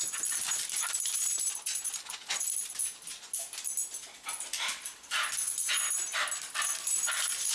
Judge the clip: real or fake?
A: real